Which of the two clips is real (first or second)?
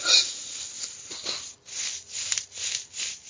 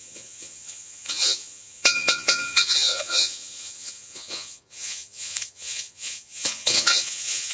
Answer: first